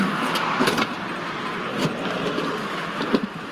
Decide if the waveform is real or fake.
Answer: fake